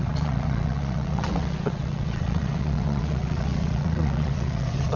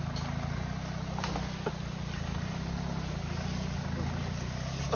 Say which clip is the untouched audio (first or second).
second